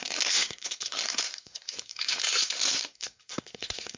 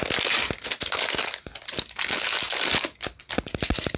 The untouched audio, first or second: second